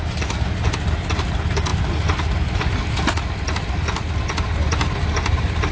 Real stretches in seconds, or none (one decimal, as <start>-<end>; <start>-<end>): 0.0-5.7